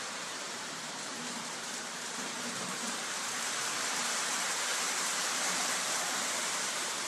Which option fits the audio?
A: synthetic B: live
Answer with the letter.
A